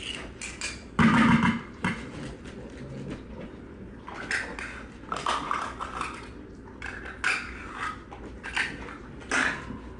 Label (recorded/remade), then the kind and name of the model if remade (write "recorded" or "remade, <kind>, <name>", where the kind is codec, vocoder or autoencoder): recorded